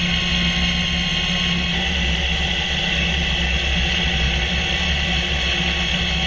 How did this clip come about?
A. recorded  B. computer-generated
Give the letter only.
A